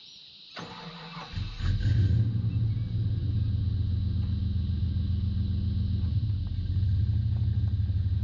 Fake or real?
real